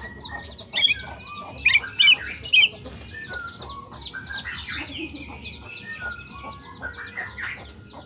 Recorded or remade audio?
recorded